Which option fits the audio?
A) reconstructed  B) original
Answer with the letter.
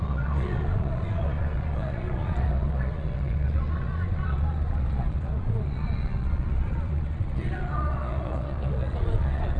A